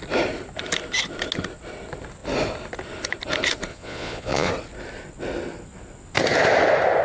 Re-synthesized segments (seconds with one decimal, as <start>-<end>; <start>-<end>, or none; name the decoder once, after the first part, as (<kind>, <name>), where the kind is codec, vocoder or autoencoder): 3.7-4.5 (vocoder, Vocos)